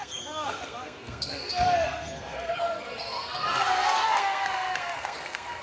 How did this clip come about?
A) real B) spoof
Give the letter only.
B